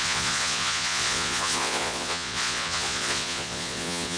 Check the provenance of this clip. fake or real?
fake